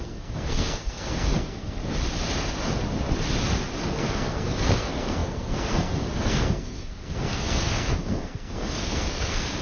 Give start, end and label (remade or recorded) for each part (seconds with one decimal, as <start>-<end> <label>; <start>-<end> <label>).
0.0-1.8 remade; 1.8-3.8 recorded; 3.8-9.6 remade